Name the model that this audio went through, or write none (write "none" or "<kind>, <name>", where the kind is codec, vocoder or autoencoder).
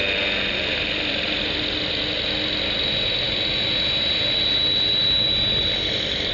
none